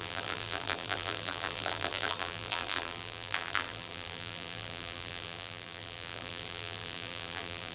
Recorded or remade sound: remade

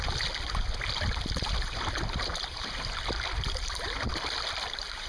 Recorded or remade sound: recorded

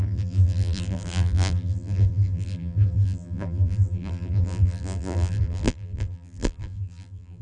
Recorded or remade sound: remade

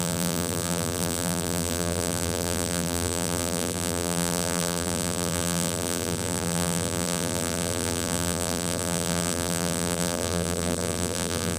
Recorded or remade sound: remade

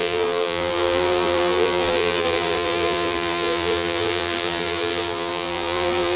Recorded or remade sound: remade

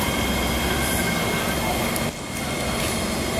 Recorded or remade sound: recorded